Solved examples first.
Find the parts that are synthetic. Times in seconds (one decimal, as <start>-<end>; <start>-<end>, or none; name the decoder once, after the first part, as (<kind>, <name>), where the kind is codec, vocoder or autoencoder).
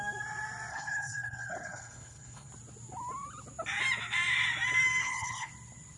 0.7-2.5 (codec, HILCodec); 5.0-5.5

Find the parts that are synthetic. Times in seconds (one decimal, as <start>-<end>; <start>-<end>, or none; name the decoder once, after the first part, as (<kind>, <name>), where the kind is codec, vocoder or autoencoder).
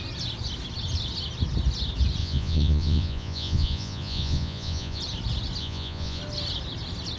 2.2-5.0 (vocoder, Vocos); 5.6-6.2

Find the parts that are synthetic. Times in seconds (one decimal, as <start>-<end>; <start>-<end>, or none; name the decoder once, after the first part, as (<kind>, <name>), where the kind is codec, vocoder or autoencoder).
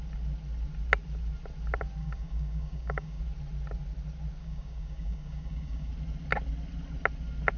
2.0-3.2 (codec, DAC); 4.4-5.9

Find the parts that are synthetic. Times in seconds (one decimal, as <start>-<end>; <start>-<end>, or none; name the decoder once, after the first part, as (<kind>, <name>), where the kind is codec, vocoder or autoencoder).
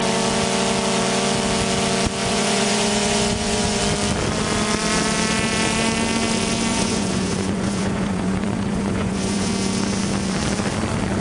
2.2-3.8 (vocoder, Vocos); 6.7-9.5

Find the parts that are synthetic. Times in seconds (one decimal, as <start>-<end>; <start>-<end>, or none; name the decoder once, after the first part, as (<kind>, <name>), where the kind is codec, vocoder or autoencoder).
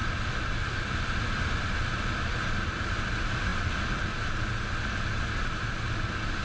none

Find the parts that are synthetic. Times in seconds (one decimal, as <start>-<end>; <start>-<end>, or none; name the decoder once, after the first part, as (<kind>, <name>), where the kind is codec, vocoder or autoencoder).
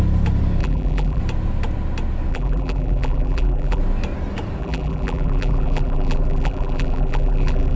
0.6-1.2 (vocoder, BigVGAN v2); 2.3-3.8; 4.6-7.8